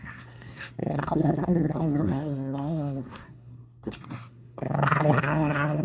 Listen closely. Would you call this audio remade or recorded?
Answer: remade